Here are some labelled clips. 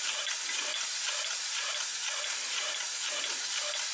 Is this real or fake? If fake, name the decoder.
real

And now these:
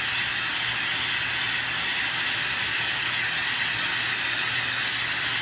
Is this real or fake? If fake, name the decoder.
real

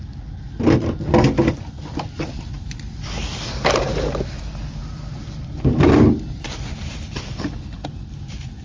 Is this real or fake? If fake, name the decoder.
real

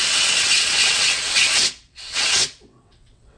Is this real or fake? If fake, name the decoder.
fake, vocoder, WaveNeXt